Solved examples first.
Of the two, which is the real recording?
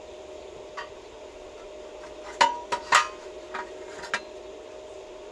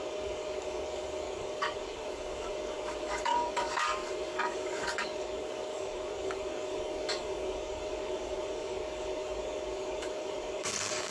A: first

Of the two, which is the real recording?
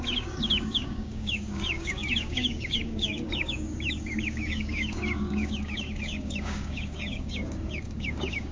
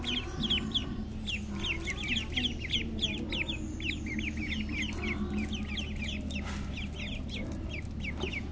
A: second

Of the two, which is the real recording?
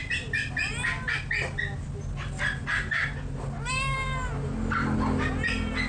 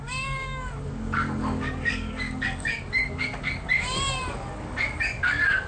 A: first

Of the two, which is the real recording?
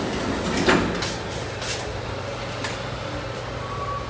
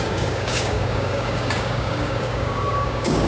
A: first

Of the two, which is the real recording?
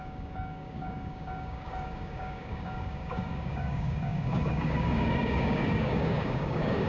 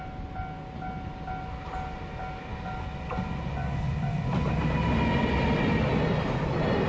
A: second